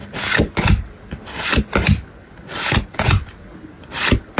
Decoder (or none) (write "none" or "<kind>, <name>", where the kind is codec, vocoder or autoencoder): none